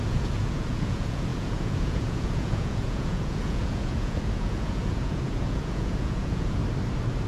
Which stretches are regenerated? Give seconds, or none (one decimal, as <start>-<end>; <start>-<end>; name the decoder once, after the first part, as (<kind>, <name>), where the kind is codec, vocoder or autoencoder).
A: 0.0-6.6 (vocoder, Vocos)